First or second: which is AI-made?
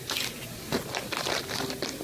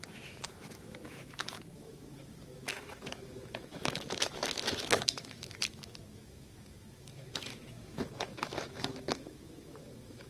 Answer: second